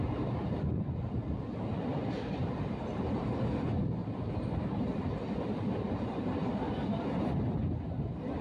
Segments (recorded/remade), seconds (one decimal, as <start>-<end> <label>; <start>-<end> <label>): 0.0-1.9 recorded; 1.9-3.0 remade; 3.0-4.0 recorded; 4.0-4.8 remade; 4.8-8.4 recorded